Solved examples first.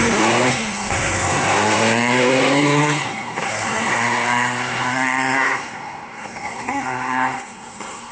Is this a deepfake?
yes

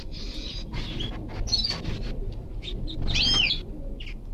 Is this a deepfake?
no